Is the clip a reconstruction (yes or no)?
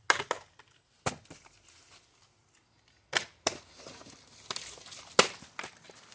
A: no